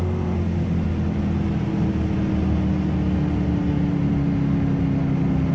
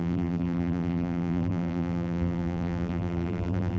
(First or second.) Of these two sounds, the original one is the first